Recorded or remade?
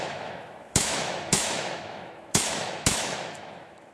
remade